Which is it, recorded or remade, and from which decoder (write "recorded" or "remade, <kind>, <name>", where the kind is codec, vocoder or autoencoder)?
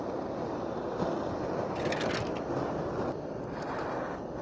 remade, vocoder, BigVGAN v2